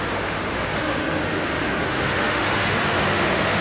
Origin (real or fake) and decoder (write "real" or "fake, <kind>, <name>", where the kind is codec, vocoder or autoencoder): fake, autoencoder, DAC-VAE